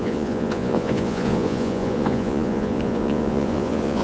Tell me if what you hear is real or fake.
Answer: fake